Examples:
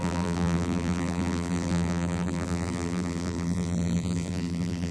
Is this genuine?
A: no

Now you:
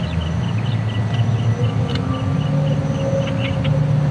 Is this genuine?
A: yes